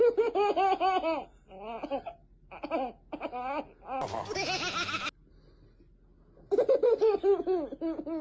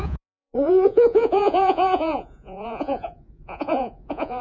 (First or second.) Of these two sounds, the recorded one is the first